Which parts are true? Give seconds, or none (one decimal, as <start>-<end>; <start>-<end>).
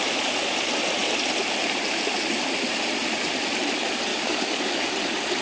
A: 0.0-4.1; 4.9-5.4